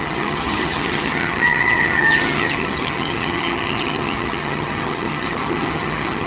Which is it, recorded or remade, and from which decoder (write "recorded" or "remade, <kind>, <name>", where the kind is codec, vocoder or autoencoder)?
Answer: remade, vocoder, HiFi-GAN